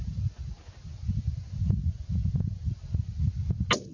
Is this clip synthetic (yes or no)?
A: no